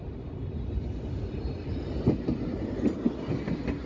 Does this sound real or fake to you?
real